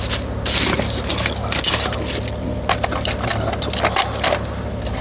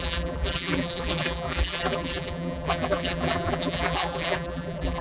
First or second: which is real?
first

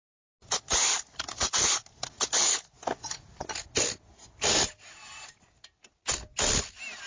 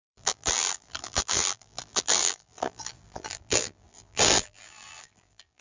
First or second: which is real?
first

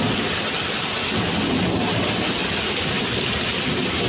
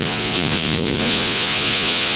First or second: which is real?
first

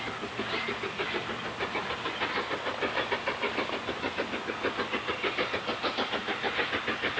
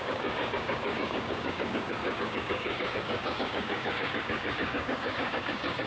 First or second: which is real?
first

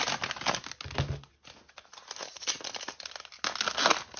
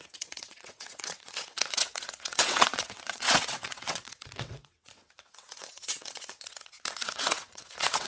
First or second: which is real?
first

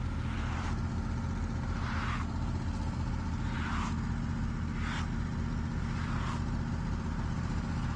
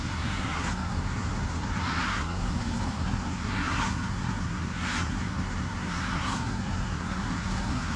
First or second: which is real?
first